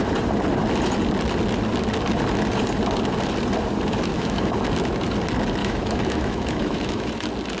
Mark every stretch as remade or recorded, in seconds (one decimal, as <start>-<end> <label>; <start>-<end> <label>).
0.0-4.1 recorded; 4.1-4.6 remade; 4.6-5.6 recorded; 5.6-7.1 remade; 7.1-7.6 recorded